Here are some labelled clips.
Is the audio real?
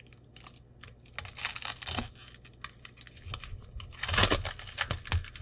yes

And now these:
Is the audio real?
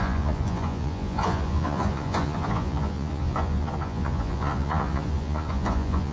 no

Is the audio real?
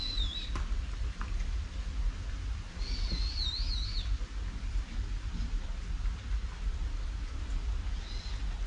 yes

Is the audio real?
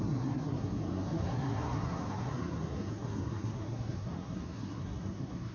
no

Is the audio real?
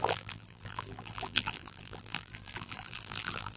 no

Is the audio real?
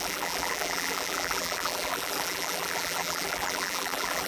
no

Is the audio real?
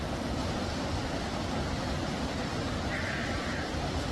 yes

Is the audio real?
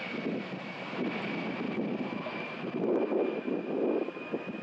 yes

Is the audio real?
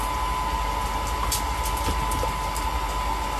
yes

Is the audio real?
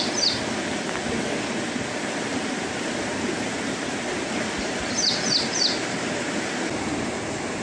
yes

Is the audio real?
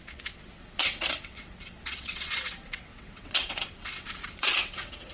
no